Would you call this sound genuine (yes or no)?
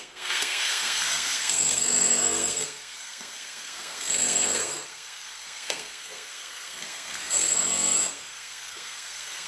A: no